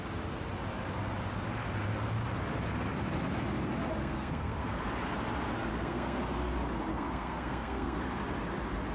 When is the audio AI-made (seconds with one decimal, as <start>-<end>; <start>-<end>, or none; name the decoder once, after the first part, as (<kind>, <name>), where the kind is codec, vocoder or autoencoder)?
4.0-4.8 (codec, SNAC); 5.7-6.2; 6.9-8.0